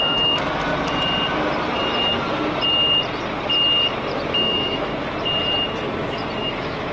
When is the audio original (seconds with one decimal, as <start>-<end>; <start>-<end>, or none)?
0.7-4.3; 4.9-6.4